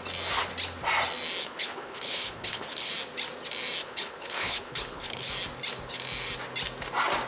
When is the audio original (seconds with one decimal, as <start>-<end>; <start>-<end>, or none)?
0.0-1.4; 2.9-3.8; 5.3-7.3